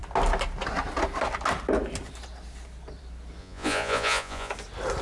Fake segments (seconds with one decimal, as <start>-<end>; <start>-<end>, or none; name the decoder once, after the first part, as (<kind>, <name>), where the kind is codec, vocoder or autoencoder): 3.4-4.5 (vocoder, Vocos)